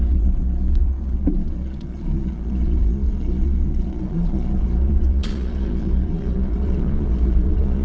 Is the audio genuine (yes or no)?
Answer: no